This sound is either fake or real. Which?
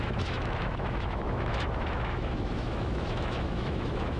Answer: fake